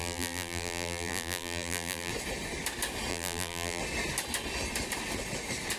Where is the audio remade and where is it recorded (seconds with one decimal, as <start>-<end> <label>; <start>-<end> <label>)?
0.0-2.1 remade; 2.1-3.1 recorded; 3.1-3.8 remade; 3.8-5.8 recorded